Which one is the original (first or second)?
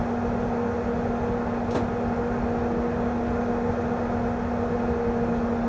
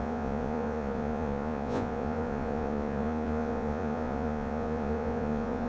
first